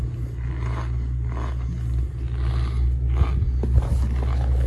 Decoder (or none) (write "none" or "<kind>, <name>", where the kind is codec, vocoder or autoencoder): none